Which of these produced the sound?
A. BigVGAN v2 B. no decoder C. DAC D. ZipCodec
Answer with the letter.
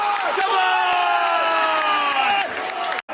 B